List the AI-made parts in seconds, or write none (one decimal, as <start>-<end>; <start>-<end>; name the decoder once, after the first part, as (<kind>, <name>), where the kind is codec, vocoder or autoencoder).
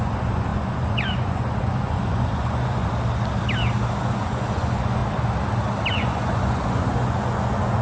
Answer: 0.0-2.8 (vocoder, Vocos); 4.0-5.0; 5.9-7.8